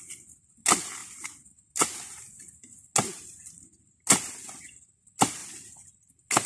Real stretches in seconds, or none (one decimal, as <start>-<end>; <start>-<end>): 0.0-6.5